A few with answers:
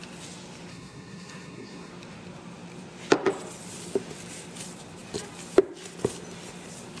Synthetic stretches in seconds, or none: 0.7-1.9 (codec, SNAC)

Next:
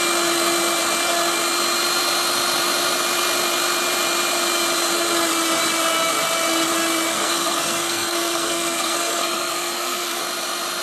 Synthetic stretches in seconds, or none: 7.1-10.2 (codec, SNAC)

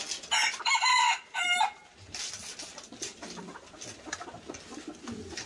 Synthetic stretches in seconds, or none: none